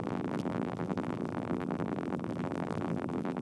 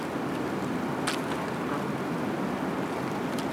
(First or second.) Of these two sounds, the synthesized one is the first